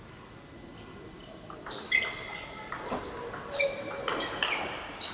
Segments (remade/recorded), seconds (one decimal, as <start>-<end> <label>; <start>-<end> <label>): 0.0-5.1 recorded